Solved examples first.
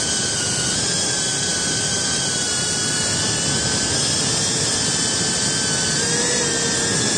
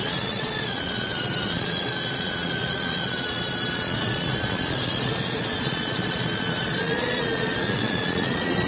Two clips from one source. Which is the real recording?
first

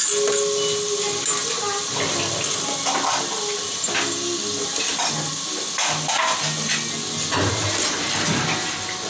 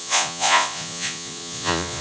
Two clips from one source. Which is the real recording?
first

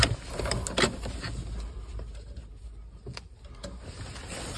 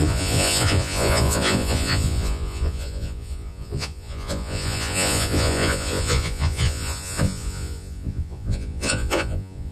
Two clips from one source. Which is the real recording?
first